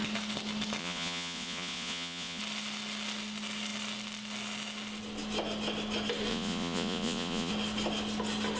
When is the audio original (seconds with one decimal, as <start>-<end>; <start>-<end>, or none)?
0.0-0.8; 2.4-6.3; 7.5-8.6